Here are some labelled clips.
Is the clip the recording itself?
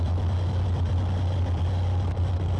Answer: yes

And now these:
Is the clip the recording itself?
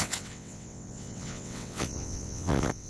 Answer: no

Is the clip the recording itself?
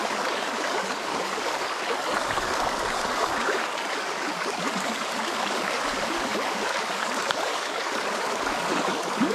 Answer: no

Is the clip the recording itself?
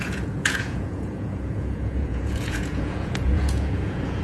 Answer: no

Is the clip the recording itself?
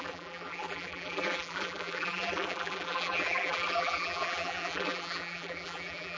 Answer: no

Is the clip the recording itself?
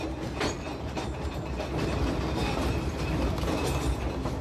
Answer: yes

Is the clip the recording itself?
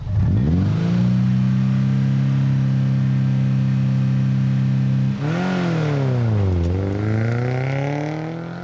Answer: yes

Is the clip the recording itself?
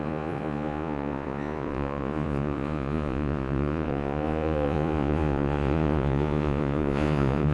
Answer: no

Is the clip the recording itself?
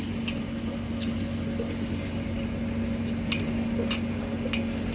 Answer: yes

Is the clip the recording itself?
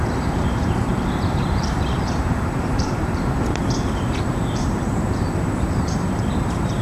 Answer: no